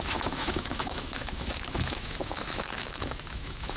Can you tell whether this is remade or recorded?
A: remade